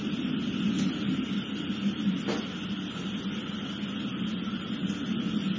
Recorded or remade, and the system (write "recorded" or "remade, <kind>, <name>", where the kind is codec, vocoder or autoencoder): recorded